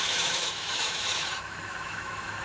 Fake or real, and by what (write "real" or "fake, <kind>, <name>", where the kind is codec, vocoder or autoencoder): fake, autoencoder, DAC-VAE